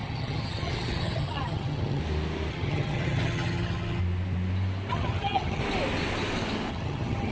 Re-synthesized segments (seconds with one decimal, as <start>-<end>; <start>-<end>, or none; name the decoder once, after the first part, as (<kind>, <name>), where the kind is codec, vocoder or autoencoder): 0.0-2.0 (vocoder, HiFi-GAN); 2.5-4.0; 4.9-5.6; 6.7-7.3